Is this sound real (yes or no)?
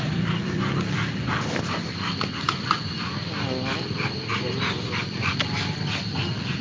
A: yes